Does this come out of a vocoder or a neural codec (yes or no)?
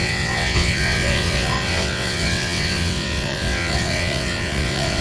yes